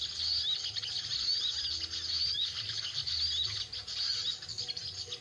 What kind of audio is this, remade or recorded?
recorded